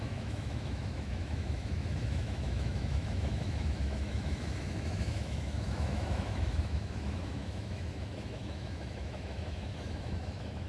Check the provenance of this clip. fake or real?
fake